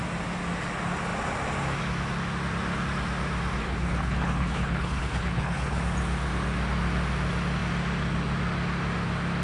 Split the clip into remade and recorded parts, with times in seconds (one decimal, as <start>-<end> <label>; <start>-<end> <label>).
0.0-3.6 recorded; 3.6-5.8 remade; 5.8-9.4 recorded